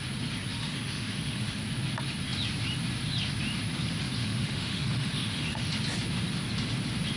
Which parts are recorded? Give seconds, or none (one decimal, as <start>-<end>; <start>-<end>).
0.0-0.6; 1.6-4.2; 5.7-7.2